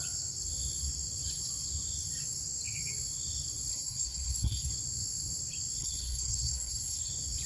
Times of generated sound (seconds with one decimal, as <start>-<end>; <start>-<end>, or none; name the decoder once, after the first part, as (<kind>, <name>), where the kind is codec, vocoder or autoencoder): 3.7-4.7 (codec, HILCodec); 5.8-7.1